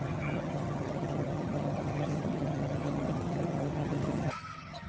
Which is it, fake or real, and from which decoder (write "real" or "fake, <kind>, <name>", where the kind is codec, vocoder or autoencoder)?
fake, vocoder, HiFi-GAN